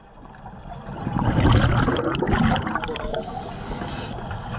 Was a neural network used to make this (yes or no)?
no